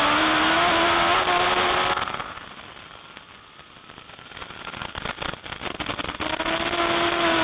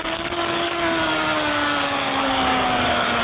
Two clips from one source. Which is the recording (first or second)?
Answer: first